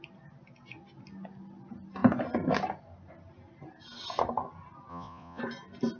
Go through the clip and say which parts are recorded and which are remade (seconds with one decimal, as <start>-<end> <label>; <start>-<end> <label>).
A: 0.0-4.9 recorded; 4.9-5.4 remade; 5.4-6.0 recorded